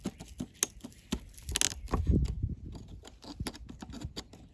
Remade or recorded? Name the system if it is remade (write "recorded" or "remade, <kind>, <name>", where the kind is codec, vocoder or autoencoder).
recorded